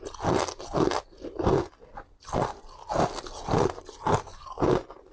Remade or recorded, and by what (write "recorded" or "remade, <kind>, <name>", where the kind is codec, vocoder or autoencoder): recorded